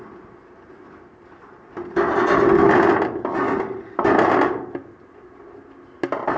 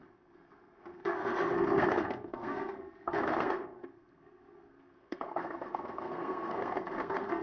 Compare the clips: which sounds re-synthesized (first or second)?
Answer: second